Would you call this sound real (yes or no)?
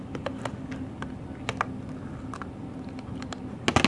yes